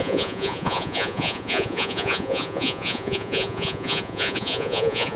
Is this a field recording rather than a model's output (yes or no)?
no